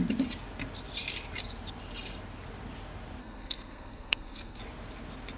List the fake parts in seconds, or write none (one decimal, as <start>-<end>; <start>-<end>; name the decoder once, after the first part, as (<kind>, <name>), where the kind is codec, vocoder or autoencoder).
3.2-4.6 (codec, SNAC)